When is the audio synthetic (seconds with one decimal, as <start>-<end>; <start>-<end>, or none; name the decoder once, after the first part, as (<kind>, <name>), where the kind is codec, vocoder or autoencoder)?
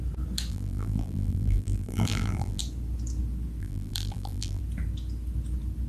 0.5-2.6 (vocoder, BigVGAN v2); 3.6-4.6